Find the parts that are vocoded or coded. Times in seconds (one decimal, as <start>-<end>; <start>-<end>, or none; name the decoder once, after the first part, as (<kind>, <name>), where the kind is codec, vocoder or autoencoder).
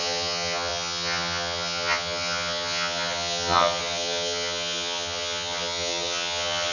0.0-6.7 (vocoder, HiFi-GAN)